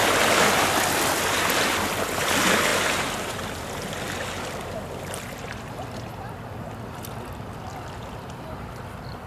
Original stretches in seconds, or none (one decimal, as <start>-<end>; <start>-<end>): 0.0-9.3